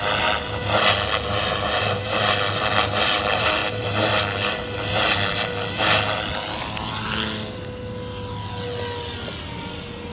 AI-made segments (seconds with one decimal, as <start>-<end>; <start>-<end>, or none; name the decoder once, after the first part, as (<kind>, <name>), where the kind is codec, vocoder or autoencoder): none